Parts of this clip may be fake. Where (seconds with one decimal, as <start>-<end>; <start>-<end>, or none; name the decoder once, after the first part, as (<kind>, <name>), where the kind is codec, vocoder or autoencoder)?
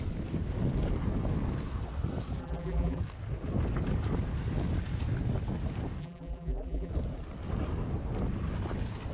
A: 2.4-3.0 (vocoder, BigVGAN v2); 6.0-6.9